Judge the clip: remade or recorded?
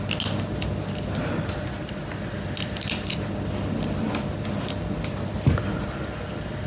recorded